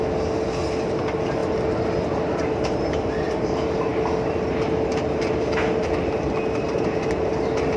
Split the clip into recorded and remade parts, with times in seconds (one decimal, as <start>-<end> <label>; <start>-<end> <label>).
0.0-7.8 recorded